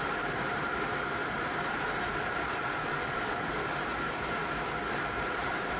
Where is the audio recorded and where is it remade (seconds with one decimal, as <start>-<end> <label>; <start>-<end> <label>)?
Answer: 0.0-4.4 remade; 4.4-5.0 recorded; 5.0-5.8 remade